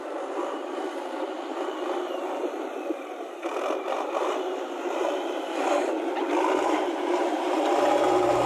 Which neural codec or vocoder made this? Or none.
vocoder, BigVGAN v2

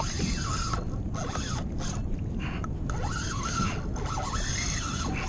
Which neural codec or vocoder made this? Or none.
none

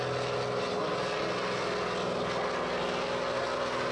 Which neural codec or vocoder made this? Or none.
none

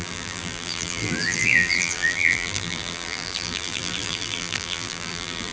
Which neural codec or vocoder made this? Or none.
vocoder, BigVGAN v2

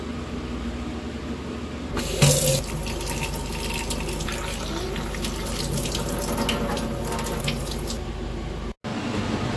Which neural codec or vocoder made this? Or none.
none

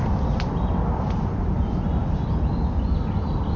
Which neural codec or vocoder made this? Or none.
none